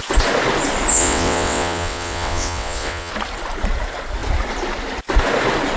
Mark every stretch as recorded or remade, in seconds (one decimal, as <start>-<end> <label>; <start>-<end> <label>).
0.0-0.9 recorded; 0.9-3.1 remade; 3.1-5.8 recorded